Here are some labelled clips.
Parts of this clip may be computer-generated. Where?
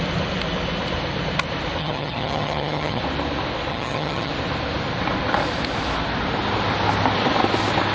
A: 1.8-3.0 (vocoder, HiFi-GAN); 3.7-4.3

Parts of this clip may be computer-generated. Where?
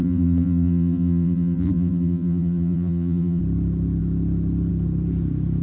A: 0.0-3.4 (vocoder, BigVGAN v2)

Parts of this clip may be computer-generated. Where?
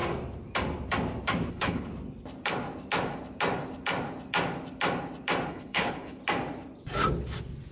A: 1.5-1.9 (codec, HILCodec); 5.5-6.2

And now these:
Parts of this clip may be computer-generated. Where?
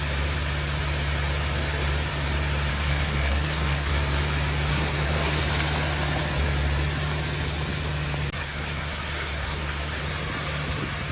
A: 2.7-3.9 (codec, SNAC); 4.7-5.4; 8.4-10.0